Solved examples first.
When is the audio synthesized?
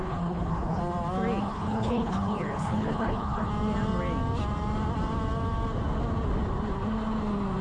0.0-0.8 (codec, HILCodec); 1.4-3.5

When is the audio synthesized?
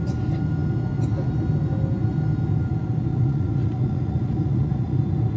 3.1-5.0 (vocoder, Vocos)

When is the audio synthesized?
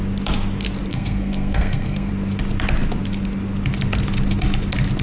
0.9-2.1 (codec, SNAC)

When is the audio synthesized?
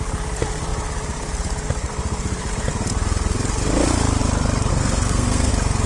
4.7-5.5 (codec, SNAC)